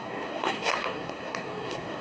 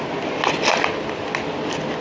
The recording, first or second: second